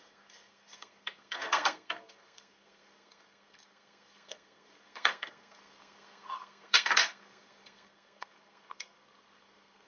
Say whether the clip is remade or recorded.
remade